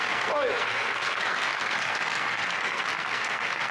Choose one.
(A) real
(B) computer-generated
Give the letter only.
B